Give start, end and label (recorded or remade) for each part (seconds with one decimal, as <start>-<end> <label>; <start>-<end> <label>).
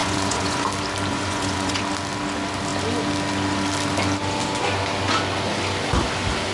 0.0-0.7 remade; 0.7-1.1 recorded; 1.1-1.8 remade; 1.8-6.5 recorded